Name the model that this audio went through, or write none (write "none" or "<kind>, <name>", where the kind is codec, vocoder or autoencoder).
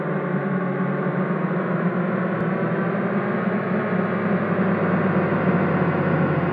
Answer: none